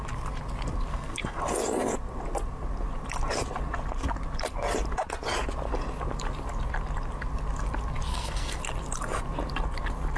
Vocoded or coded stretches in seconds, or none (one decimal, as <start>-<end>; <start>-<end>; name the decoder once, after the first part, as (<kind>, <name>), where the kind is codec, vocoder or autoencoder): 0.9-1.4 (codec, SNAC); 8.1-8.6